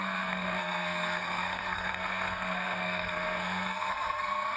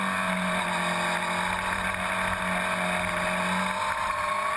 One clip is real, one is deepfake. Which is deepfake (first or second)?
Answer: first